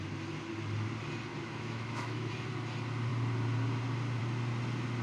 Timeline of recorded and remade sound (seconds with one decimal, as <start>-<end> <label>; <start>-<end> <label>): 0.0-1.3 recorded; 1.3-2.3 remade; 2.3-5.0 recorded